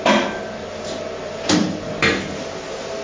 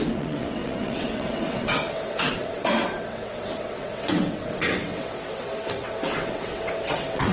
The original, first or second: first